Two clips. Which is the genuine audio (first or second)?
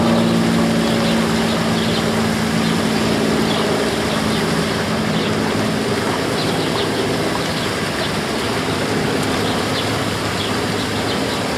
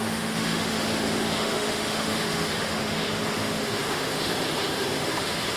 first